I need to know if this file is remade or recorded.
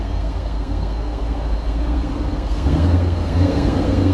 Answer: remade